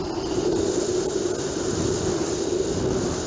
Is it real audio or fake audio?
real